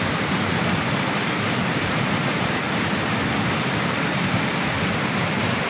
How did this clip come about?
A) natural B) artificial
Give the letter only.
A